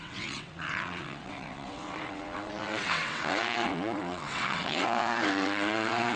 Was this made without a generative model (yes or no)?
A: no